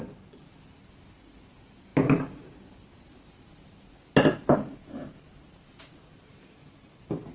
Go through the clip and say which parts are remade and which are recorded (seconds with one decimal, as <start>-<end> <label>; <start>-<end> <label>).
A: 0.0-7.3 recorded